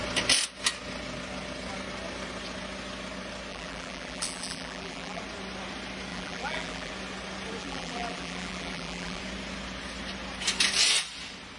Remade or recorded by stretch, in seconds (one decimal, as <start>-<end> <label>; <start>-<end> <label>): 0.0-3.5 recorded; 3.5-5.2 remade; 5.2-6.1 recorded; 6.1-6.9 remade; 6.9-7.6 recorded; 7.6-9.2 remade; 9.2-11.6 recorded